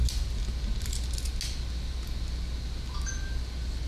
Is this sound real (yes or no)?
yes